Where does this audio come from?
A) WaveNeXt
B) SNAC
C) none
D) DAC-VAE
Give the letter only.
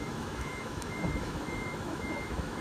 D